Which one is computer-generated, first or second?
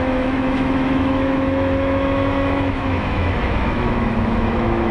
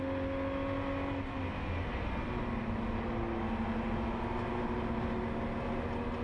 first